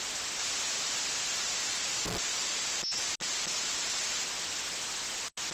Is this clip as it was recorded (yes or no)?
yes